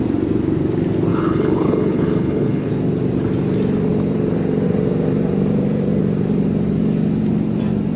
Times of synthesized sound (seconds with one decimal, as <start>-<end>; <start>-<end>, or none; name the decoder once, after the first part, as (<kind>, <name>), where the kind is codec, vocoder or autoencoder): 1.1-2.7 (codec, HILCodec)